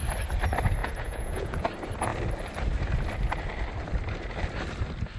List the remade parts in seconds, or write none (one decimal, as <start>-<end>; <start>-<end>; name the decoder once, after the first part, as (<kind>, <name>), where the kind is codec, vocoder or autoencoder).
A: 0.8-1.7 (vocoder, Vocos)